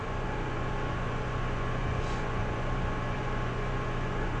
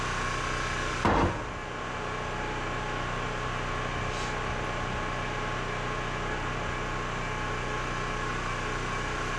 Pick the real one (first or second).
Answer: second